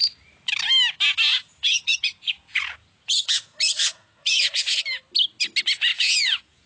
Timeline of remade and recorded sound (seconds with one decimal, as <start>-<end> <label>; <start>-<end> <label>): 0.0-1.3 recorded; 1.3-4.8 remade; 4.8-5.9 recorded; 5.9-6.7 remade